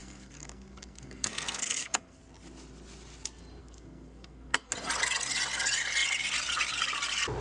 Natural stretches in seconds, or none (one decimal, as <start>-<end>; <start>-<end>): 2.2-3.6; 4.7-7.4